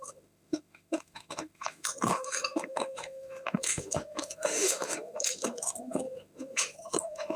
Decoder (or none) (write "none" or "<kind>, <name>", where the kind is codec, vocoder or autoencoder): autoencoder, DAC-VAE